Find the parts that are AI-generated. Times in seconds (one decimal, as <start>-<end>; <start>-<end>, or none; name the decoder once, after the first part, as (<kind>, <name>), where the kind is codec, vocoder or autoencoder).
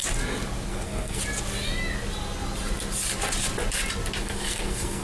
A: 0.7-1.2 (codec, SNAC); 4.2-5.0